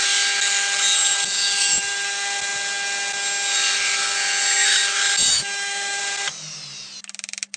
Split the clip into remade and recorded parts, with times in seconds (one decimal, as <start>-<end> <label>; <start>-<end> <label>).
0.0-5.3 recorded; 5.3-6.0 remade; 6.0-7.6 recorded